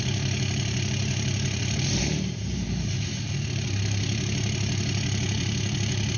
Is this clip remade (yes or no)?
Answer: yes